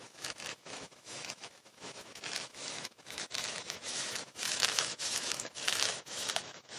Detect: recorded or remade remade